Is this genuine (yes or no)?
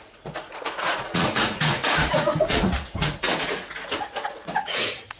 no